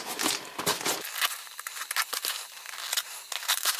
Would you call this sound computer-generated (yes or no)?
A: no